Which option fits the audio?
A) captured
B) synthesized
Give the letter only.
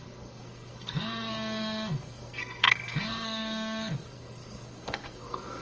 B